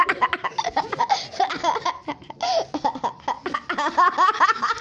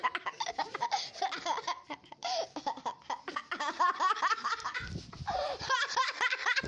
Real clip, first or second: first